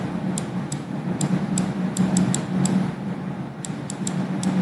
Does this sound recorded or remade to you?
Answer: recorded